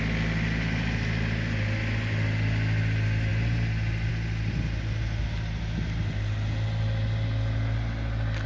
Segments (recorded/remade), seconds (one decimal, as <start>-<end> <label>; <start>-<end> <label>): 0.0-8.5 recorded